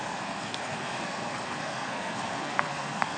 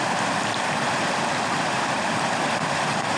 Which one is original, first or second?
second